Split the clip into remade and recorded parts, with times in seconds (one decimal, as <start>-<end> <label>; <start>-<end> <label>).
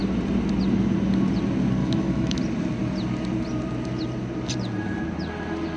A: 0.0-1.8 recorded; 1.8-2.4 remade; 2.4-5.8 recorded